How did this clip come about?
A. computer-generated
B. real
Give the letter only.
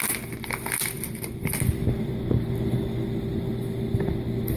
B